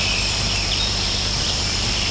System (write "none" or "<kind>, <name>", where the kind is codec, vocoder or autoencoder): vocoder, BigVGAN v2